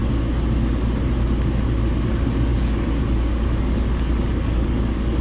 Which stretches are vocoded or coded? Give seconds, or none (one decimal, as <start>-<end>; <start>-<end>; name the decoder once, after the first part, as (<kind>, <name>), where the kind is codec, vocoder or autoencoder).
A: 2.1-5.2 (codec, DAC)